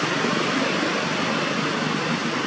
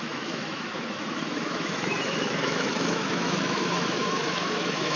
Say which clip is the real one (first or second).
first